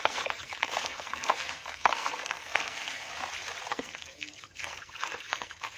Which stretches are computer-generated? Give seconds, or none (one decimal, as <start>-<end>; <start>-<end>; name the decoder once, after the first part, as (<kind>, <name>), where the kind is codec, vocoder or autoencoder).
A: 0.0-3.1 (codec, SNAC); 3.7-5.8